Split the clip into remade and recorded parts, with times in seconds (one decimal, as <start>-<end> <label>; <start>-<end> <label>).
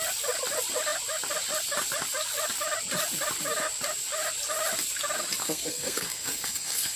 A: 0.0-5.4 recorded; 5.4-7.0 remade